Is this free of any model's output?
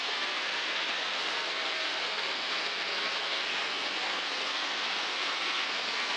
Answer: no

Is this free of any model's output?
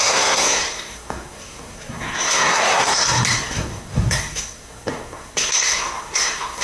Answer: no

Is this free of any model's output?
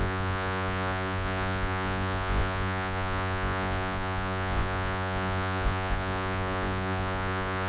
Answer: no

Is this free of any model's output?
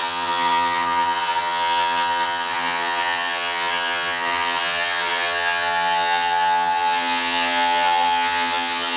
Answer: no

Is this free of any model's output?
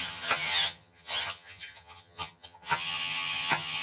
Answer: no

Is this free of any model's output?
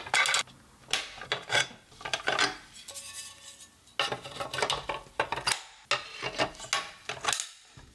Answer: yes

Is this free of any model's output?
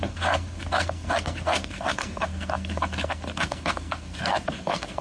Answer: no